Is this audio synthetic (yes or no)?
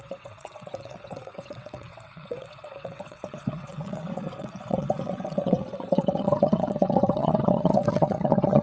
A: yes